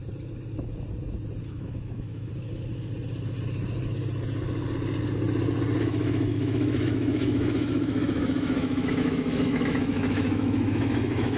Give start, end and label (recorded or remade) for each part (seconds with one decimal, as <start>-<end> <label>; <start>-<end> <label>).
0.0-1.5 recorded; 1.5-2.3 remade; 2.3-5.8 recorded; 5.8-11.4 remade